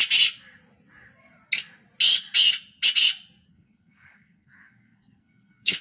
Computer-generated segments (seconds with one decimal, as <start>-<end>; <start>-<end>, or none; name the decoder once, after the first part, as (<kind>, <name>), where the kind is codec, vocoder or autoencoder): 3.5-5.8 (codec, SNAC)